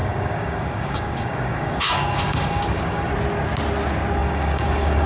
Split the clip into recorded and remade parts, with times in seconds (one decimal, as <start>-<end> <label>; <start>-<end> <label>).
0.0-3.1 remade; 3.1-4.2 recorded; 4.2-5.1 remade